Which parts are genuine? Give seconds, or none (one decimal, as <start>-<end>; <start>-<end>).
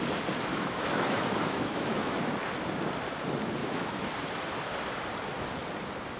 0.0-0.5; 2.3-3.6; 4.1-6.2